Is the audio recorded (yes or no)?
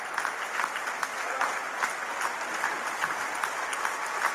yes